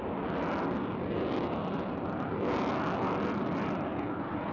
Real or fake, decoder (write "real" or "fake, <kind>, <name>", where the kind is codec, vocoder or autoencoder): real